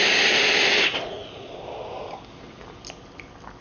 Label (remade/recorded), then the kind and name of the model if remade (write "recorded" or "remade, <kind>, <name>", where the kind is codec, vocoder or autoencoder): recorded